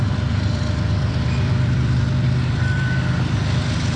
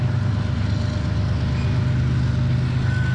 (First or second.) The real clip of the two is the second